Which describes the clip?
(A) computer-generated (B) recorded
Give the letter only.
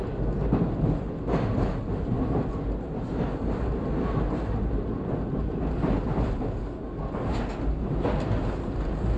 B